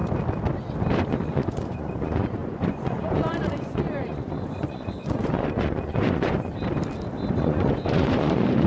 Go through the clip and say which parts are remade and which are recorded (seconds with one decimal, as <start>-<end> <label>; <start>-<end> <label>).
0.0-1.1 recorded; 1.1-6.5 remade; 6.5-7.4 recorded; 7.4-8.7 remade

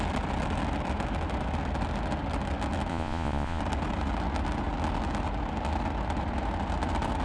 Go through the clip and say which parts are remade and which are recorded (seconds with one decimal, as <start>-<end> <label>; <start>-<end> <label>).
0.0-2.9 recorded; 2.9-3.6 remade; 3.6-7.2 recorded

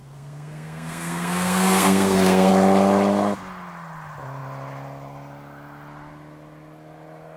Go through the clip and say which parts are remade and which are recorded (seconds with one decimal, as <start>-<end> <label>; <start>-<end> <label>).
0.0-2.5 remade; 2.5-7.4 recorded